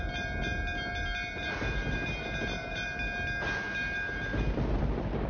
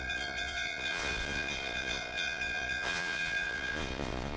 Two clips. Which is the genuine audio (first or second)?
first